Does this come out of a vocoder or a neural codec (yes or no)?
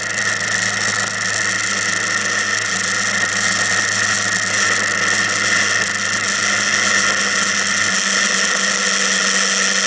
no